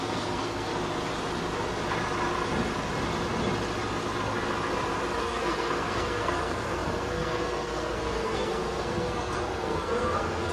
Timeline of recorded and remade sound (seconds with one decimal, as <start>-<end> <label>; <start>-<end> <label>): 0.0-0.7 remade; 0.7-5.2 recorded; 5.2-10.5 remade